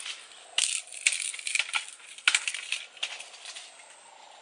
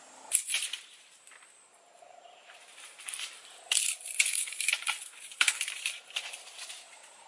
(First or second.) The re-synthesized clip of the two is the second